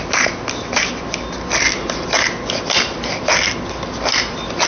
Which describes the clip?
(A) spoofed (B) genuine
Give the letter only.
B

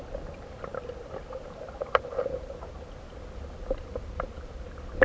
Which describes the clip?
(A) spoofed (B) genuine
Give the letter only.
B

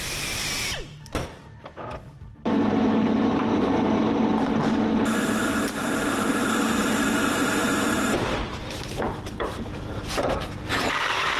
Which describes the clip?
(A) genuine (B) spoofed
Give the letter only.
B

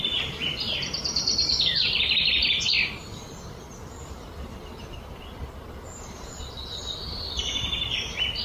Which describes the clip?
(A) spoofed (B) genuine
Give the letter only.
A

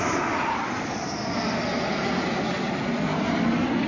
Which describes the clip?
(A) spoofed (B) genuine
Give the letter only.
B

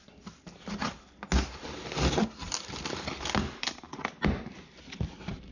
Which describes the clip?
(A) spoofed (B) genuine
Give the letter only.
B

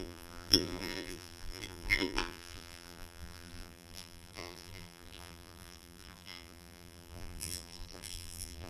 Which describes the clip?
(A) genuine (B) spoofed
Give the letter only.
B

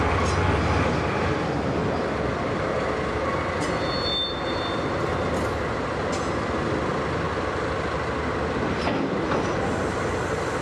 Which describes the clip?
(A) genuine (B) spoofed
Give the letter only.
A